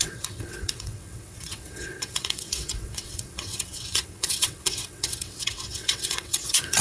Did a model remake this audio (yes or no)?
yes